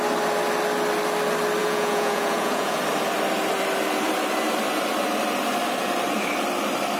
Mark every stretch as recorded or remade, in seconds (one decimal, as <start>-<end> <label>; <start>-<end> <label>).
0.0-1.6 recorded; 1.6-2.8 remade; 2.8-7.0 recorded